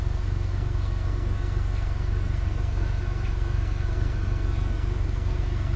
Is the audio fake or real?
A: fake